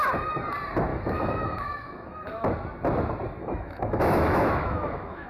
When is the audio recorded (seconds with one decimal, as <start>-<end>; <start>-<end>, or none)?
0.0-0.9; 2.5-3.4